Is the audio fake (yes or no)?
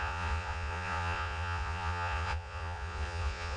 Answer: yes